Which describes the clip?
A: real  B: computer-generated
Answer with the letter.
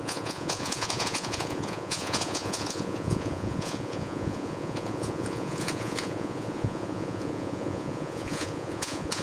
B